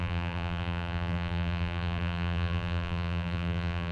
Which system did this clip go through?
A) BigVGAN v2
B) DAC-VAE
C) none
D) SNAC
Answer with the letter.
A